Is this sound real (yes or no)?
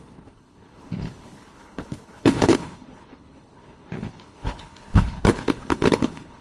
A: no